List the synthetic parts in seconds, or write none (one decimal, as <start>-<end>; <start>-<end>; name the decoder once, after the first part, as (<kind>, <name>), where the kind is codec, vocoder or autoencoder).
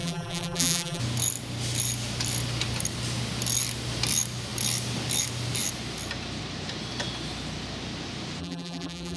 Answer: 0.0-1.0 (vocoder, BigVGAN v2); 8.4-9.2